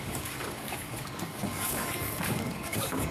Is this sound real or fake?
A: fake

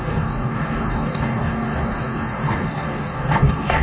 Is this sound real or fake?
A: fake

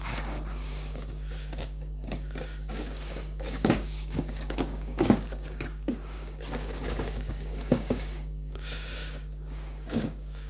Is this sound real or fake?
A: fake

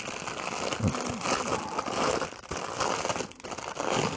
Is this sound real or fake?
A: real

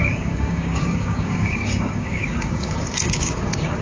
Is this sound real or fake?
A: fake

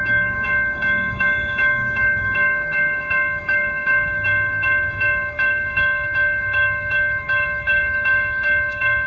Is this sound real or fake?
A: fake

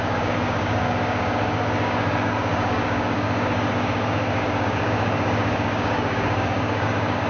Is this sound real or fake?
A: fake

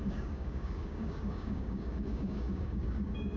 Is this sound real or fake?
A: fake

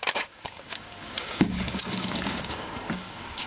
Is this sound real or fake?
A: fake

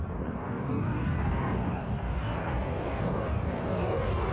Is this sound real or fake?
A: fake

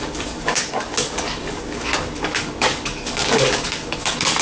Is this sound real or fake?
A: fake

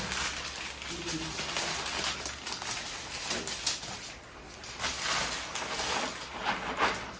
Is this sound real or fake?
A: real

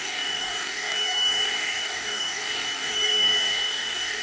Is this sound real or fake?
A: fake